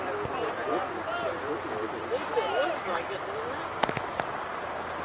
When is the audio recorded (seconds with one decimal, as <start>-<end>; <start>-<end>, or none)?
0.0-5.0